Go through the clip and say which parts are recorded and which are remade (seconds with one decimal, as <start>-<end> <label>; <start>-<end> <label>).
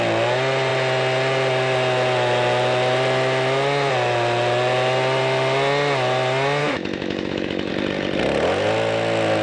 0.0-6.6 recorded; 6.6-7.7 remade; 7.7-9.4 recorded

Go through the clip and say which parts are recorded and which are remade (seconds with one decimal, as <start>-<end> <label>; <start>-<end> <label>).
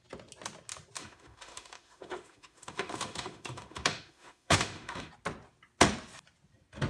0.0-1.0 recorded; 1.0-5.1 remade; 5.1-6.9 recorded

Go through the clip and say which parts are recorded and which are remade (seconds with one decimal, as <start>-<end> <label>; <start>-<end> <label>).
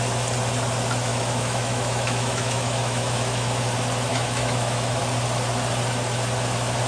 0.0-1.1 recorded; 1.1-3.6 remade; 3.6-4.1 recorded; 4.1-5.0 remade; 5.0-6.9 recorded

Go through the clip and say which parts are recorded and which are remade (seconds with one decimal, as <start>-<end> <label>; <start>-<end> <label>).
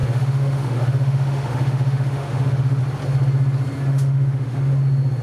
0.0-2.8 remade; 2.8-3.9 recorded; 3.9-4.6 remade; 4.6-5.2 recorded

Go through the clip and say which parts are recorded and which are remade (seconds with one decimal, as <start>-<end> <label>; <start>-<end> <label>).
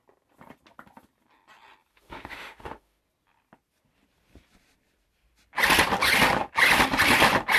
0.0-1.9 recorded; 1.9-3.0 remade; 3.0-7.6 recorded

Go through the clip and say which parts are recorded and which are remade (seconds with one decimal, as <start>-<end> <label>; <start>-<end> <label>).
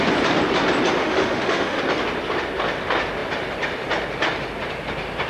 0.0-1.0 recorded; 1.0-1.8 remade; 1.8-5.3 recorded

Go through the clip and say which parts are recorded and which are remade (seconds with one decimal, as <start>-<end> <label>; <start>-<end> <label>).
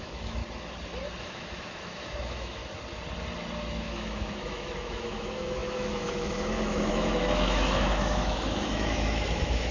0.0-0.4 remade; 0.4-1.2 recorded; 1.2-2.6 remade; 2.6-3.7 recorded; 3.7-9.7 remade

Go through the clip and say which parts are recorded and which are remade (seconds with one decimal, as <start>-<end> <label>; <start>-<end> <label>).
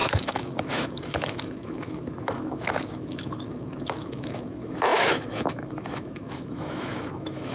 0.0-7.5 remade